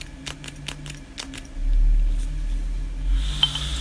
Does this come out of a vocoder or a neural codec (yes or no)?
no